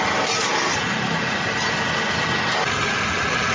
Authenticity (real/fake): real